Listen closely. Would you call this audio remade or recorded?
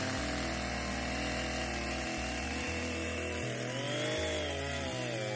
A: recorded